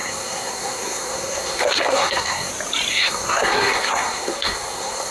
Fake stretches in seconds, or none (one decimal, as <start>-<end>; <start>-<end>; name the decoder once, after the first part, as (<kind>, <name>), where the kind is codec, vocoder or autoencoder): 0.0-2.5 (codec, SNAC); 2.9-5.1